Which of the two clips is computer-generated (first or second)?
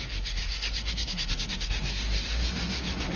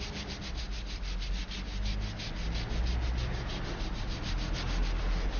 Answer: first